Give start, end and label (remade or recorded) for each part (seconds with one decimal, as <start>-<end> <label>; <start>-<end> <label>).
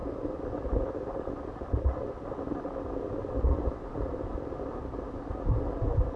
0.0-3.9 recorded; 3.9-4.5 remade; 4.5-6.2 recorded